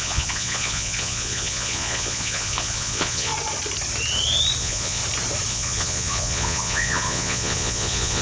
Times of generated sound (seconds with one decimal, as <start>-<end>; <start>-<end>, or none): 0.0-3.3; 4.6-5.0; 5.5-8.2